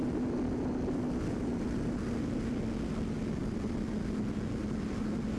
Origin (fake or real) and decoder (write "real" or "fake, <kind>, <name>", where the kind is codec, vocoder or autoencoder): real